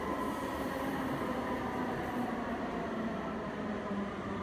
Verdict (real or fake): real